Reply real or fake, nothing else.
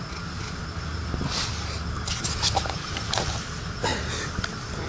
real